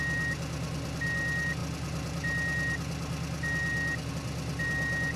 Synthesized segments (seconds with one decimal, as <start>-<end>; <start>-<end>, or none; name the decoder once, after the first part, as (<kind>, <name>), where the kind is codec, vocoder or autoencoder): none